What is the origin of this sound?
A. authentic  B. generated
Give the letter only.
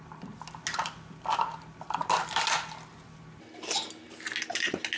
A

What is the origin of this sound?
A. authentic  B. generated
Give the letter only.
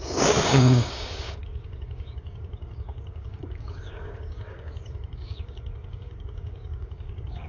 B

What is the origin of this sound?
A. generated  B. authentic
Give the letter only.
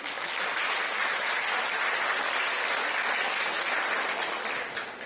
B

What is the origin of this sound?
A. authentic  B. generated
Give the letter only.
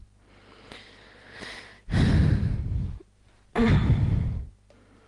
A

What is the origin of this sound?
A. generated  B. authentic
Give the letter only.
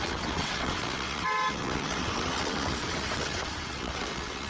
A